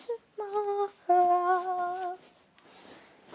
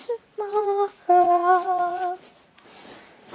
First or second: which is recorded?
first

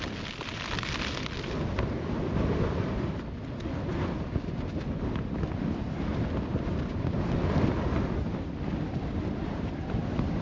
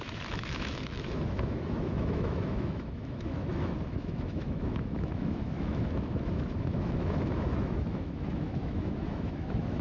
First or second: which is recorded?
first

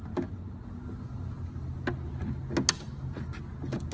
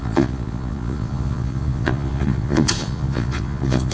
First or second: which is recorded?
first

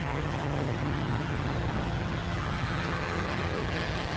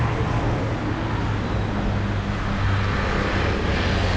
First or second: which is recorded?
second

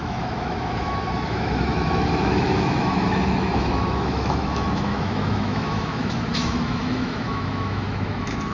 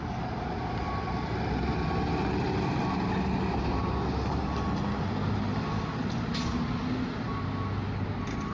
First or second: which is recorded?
second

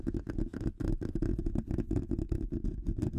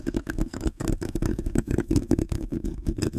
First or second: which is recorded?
first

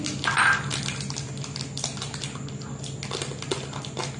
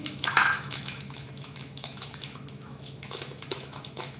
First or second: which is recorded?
first